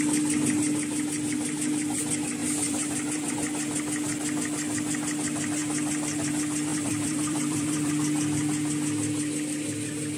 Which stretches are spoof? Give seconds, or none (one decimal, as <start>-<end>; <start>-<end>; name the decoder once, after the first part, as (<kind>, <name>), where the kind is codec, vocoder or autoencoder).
2.4-3.3 (vocoder, BigVGAN v2); 6.7-7.9